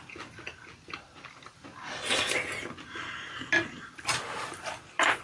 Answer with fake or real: real